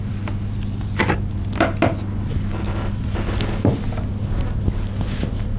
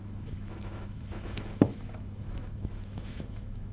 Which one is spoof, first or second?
second